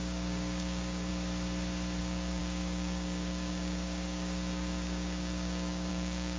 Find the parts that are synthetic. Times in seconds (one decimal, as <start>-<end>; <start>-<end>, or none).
0.0-1.1; 2.0-6.4